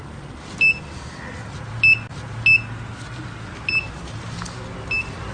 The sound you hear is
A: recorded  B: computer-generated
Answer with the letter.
A